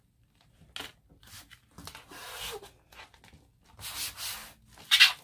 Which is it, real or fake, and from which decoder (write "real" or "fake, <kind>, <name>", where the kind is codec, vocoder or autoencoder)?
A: real